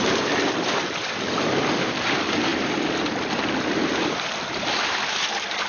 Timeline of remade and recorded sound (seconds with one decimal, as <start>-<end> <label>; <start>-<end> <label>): 0.0-5.7 recorded